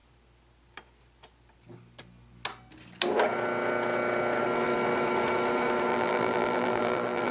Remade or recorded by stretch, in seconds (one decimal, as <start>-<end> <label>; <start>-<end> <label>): 0.0-5.9 recorded; 5.9-7.3 remade